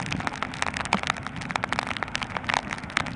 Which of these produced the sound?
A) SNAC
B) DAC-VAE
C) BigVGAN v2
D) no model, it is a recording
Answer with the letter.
D